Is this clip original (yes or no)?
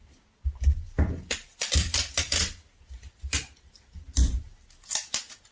yes